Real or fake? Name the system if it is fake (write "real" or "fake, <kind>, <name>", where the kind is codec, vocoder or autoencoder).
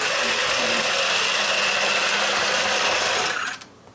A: real